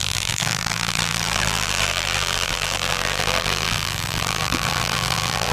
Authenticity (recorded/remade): remade